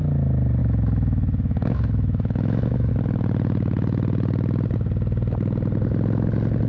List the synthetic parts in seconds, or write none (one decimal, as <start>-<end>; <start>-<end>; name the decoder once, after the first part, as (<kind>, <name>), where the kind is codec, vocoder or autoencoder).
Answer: 0.6-2.9 (autoencoder, DAC-VAE)